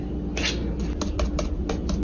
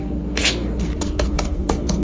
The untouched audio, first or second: first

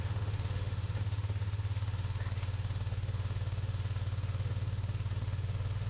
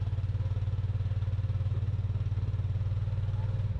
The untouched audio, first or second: second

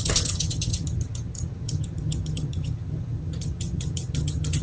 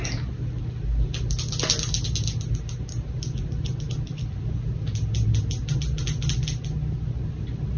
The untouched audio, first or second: second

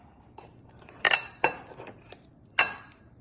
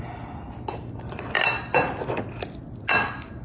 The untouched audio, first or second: second